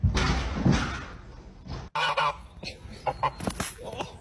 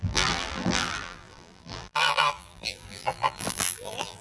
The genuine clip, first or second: first